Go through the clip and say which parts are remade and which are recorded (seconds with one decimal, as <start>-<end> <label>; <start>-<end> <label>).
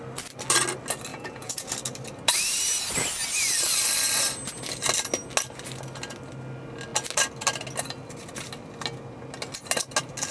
0.0-1.1 recorded; 1.1-1.7 remade; 1.7-10.3 recorded